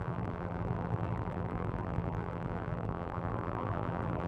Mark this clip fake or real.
fake